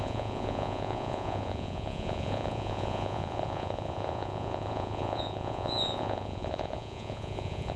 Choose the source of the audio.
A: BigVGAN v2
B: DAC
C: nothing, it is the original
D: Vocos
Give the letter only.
D